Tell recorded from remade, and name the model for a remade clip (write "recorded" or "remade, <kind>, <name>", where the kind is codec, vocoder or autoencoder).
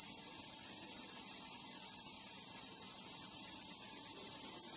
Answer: remade, vocoder, BigVGAN v2